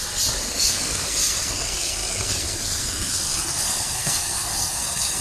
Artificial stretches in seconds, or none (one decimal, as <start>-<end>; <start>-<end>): 0.5-5.2